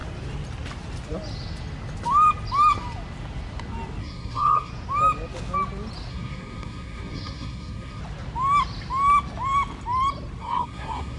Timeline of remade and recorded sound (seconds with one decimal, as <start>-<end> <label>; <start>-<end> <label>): 0.0-4.0 recorded; 4.0-4.7 remade; 4.7-6.1 recorded; 6.1-8.0 remade; 8.0-10.4 recorded; 10.4-11.2 remade